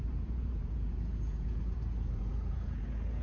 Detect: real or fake fake